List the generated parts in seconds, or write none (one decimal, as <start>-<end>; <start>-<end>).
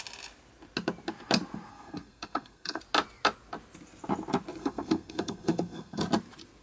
1.7-2.8; 4.6-6.0